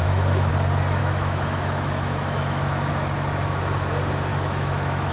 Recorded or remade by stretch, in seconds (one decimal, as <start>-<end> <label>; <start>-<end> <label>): 0.0-0.5 remade; 0.5-1.0 recorded; 1.0-2.9 remade; 2.9-4.3 recorded; 4.3-5.1 remade